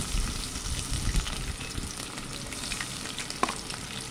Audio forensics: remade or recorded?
recorded